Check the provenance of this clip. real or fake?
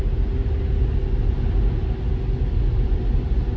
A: real